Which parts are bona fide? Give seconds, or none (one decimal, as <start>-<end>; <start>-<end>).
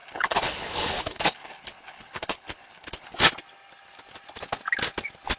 3.2-5.4